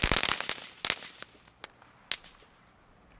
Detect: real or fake real